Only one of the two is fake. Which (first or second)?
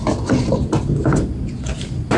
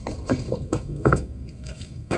second